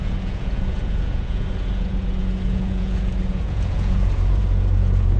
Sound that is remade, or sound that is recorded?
remade